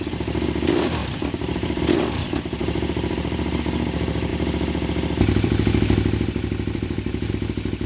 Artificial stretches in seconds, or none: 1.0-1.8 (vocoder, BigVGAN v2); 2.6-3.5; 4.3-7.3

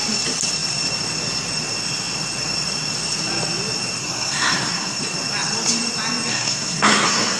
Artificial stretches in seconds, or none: 4.0-5.0 (codec, SNAC); 6.3-7.4